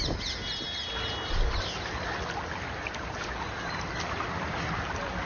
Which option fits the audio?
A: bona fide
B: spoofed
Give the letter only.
A